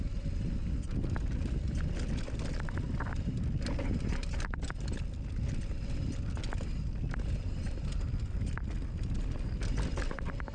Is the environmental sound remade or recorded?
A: recorded